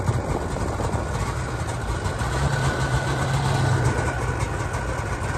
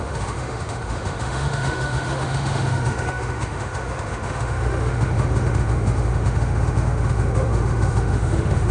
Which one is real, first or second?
first